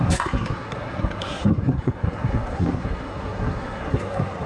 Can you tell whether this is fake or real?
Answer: fake